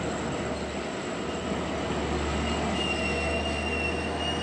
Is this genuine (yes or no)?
yes